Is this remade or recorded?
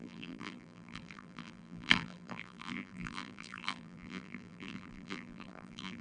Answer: remade